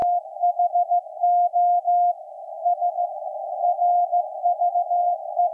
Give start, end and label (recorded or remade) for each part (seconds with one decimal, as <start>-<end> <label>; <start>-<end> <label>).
0.0-5.5 recorded